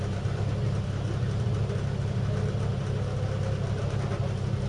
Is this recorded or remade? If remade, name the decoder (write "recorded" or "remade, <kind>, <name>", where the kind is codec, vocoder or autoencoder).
recorded